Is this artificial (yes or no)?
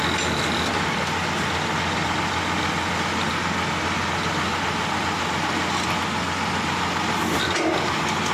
no